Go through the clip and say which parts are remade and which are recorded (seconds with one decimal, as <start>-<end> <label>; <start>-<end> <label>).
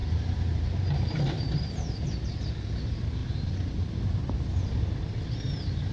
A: 0.0-2.5 remade; 2.5-3.2 recorded; 3.2-5.9 remade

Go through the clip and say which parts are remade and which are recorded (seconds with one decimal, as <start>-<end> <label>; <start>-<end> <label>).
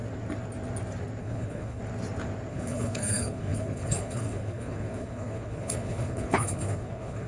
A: 0.0-1.2 recorded; 1.2-1.8 remade; 1.8-2.5 recorded; 2.5-7.3 remade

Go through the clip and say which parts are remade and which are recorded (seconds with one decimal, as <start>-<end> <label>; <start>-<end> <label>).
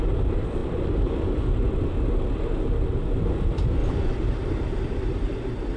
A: 0.0-0.6 recorded; 0.6-1.7 remade; 1.7-3.8 recorded; 3.8-4.6 remade; 4.6-5.8 recorded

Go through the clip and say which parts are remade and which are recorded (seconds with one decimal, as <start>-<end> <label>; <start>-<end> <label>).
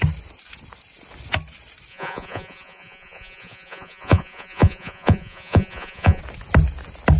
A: 0.0-1.9 recorded; 1.9-6.2 remade; 6.2-7.2 recorded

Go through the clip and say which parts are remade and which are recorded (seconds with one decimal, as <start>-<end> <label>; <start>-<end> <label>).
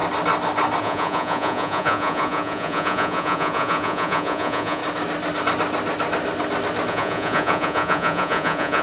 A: 0.0-0.8 recorded; 0.8-4.8 remade; 4.8-6.9 recorded; 6.9-8.8 remade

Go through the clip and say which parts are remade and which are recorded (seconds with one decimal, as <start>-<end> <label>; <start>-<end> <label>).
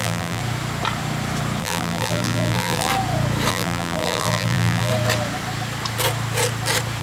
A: 0.0-0.4 remade; 0.4-1.6 recorded; 1.6-2.9 remade; 2.9-3.5 recorded; 3.5-4.9 remade; 4.9-7.0 recorded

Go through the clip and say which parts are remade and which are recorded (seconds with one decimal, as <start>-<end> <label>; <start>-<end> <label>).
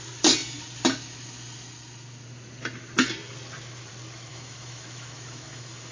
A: 0.0-4.3 recorded; 4.3-5.9 remade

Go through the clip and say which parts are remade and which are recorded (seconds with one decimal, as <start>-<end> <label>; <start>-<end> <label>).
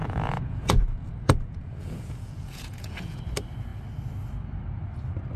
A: 0.0-3.2 remade; 3.2-5.4 recorded